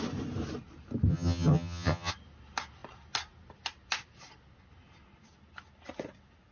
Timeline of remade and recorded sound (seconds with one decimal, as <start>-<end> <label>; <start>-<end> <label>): 0.0-1.1 recorded; 1.1-2.1 remade; 2.1-6.5 recorded